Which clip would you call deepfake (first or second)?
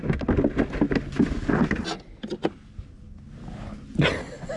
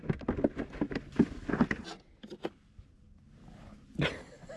second